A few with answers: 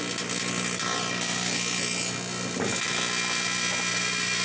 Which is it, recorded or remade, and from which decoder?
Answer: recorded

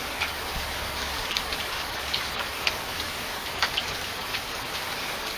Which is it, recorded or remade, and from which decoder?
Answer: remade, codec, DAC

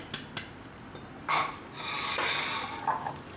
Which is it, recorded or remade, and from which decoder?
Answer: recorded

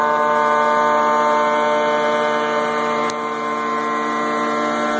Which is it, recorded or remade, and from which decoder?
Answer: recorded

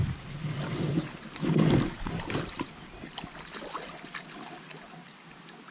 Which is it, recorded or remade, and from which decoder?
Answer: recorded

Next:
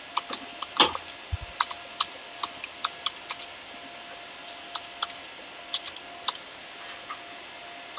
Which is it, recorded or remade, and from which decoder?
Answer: recorded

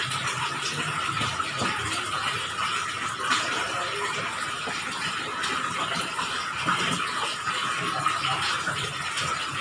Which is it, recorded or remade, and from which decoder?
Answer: recorded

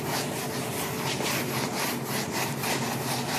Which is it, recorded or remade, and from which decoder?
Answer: recorded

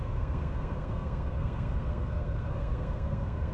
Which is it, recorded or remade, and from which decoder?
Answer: remade, codec, SNAC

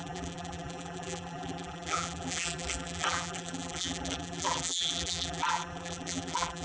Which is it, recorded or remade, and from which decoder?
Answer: remade, vocoder, BigVGAN v2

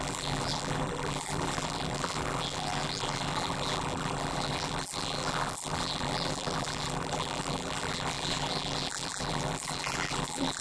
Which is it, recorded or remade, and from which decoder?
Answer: remade, vocoder, BigVGAN v2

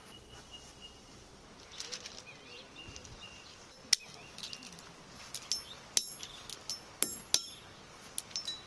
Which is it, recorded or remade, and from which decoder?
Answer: recorded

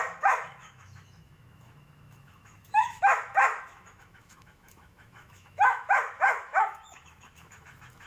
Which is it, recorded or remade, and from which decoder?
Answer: remade, autoencoder, DAC-VAE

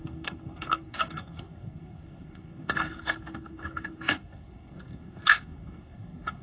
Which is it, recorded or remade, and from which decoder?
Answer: remade, codec, SNAC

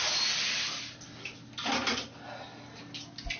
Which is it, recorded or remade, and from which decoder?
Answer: recorded